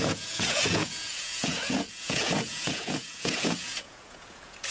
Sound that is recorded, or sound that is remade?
remade